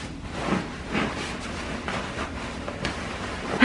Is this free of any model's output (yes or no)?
yes